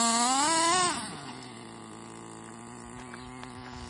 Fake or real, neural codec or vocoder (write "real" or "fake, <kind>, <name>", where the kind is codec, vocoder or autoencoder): real